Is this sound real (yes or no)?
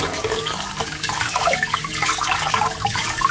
no